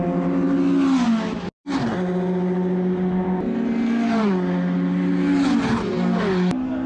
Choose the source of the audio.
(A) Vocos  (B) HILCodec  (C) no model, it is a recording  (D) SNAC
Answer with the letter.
C